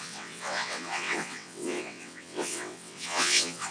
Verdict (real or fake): fake